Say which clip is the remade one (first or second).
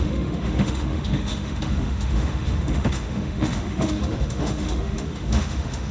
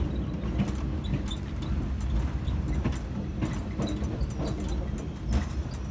first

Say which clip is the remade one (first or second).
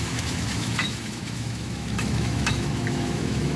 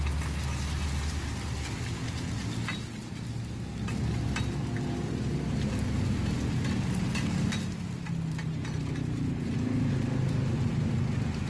first